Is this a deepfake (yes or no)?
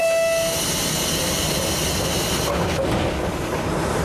no